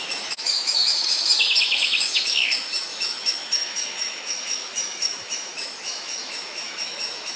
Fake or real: fake